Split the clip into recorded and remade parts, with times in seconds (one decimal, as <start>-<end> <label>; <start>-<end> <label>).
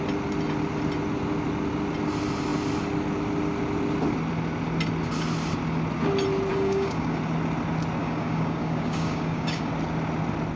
0.0-6.5 recorded; 6.5-7.2 remade; 7.2-8.0 recorded; 8.0-9.7 remade; 9.7-10.6 recorded